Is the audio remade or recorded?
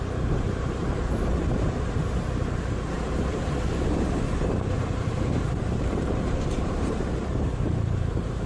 remade